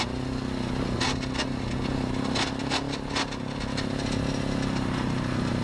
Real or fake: real